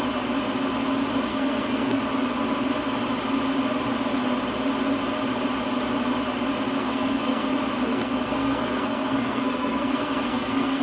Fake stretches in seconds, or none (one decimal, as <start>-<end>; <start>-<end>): 1.3-2.0; 6.8-7.5; 7.9-10.8